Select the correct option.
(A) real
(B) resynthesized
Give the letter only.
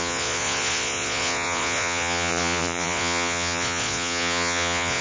B